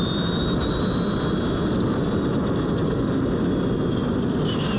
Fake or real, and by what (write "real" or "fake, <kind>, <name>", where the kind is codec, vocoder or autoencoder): real